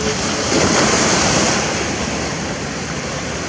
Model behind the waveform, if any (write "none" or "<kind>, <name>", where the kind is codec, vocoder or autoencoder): none